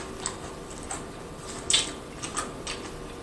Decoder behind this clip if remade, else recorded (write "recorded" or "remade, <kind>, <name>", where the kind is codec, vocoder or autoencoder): recorded